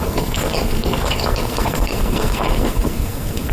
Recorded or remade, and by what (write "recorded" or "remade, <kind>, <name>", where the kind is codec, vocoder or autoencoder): remade, codec, SNAC